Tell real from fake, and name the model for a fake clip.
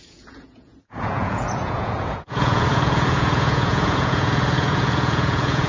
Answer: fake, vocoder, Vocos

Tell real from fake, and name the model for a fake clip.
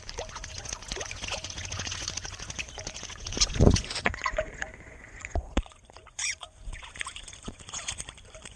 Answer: fake, vocoder, Vocos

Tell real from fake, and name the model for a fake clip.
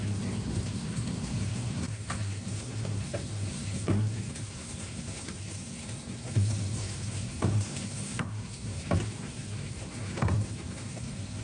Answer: fake, codec, SNAC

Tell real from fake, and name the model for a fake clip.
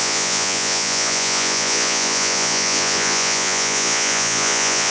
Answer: fake, vocoder, Vocos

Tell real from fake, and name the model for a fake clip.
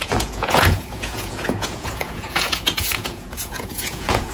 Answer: fake, vocoder, Vocos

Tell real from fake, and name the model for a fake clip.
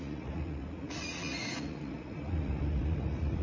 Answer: fake, vocoder, Vocos